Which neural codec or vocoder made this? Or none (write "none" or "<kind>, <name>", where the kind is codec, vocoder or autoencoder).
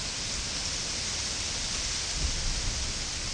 none